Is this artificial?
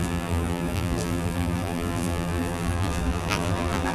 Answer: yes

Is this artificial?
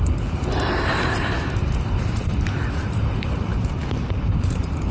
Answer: yes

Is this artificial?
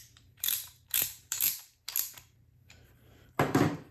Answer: yes